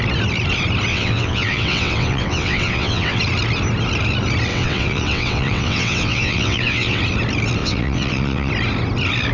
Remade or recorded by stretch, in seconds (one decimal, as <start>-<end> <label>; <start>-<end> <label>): 0.0-0.9 recorded; 0.9-3.2 remade; 3.2-4.5 recorded; 4.5-7.0 remade; 7.0-7.6 recorded; 7.6-8.5 remade; 8.5-9.3 recorded